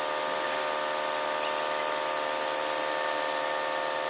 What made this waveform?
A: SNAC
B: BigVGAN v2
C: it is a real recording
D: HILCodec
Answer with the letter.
C